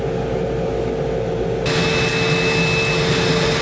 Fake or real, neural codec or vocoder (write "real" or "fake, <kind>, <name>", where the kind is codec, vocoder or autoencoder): real